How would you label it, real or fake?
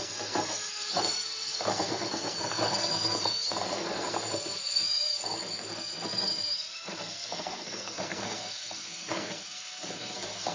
fake